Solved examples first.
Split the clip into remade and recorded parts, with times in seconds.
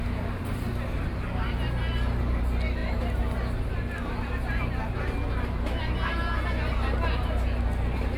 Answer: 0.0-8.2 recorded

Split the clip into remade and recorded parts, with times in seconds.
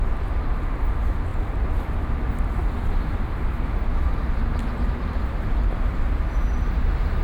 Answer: 0.0-1.3 recorded; 1.3-1.9 remade; 1.9-2.6 recorded; 2.6-7.2 remade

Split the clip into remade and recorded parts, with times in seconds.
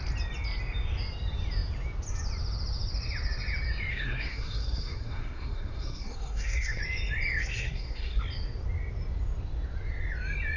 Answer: 0.0-3.9 recorded; 3.9-6.8 remade; 6.8-7.4 recorded; 7.4-8.2 remade; 8.2-10.6 recorded